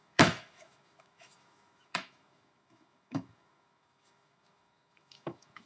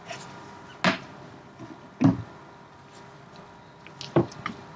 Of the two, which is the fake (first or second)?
first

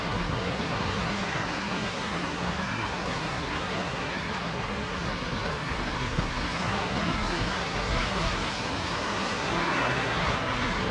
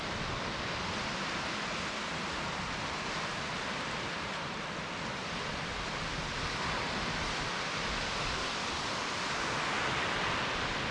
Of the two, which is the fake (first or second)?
first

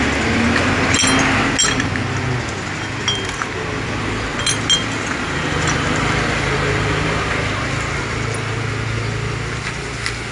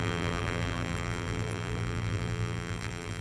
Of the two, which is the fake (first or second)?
second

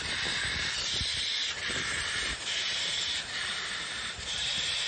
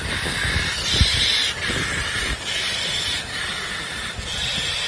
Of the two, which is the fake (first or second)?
first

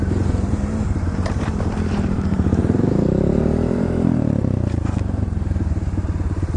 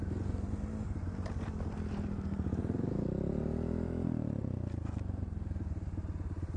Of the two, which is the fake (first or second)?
first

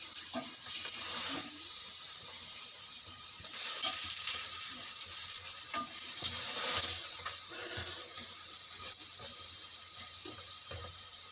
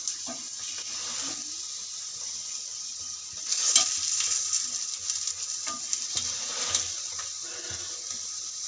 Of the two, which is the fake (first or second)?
first